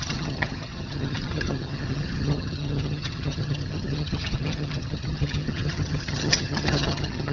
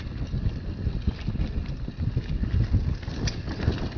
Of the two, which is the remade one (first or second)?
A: first